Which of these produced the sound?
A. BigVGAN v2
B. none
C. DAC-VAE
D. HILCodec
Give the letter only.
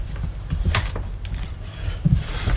A